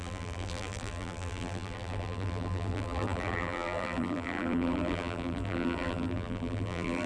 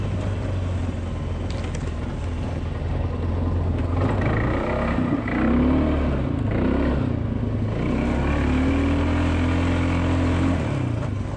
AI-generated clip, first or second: first